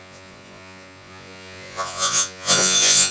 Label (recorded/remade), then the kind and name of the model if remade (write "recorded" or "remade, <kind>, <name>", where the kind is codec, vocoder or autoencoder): remade, vocoder, Vocos